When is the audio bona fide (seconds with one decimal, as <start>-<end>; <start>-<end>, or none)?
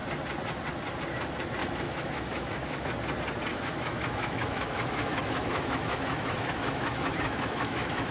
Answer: 0.0-1.6; 2.9-3.5